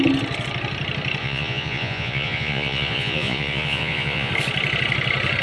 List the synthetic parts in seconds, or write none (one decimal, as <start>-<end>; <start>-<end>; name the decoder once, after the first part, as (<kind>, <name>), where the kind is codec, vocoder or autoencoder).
1.2-4.3 (vocoder, Vocos)